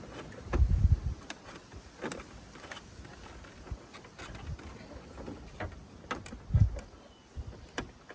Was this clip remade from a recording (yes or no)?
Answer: no